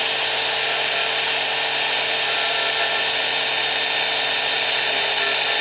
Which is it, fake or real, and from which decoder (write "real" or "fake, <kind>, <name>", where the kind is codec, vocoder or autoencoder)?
real